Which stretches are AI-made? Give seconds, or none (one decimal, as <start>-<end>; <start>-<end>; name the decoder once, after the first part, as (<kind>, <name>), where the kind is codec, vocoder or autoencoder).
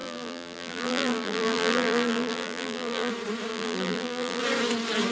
0.0-3.1 (vocoder, BigVGAN v2); 3.5-4.4